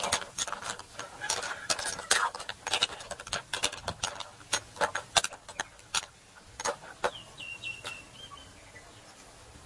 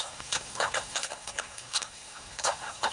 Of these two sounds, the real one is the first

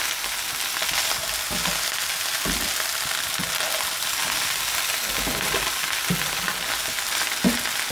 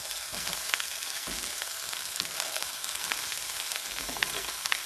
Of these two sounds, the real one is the first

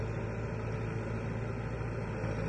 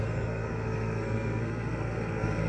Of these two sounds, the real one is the first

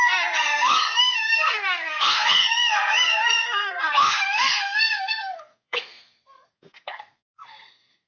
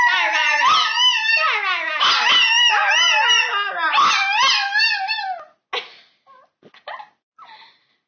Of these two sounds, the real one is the second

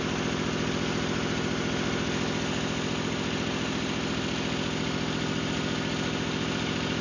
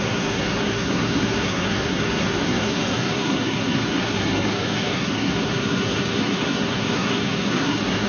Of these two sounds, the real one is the first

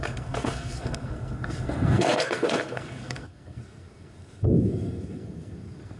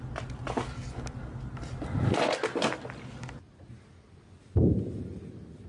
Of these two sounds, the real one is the second